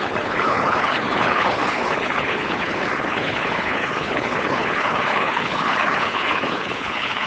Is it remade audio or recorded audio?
remade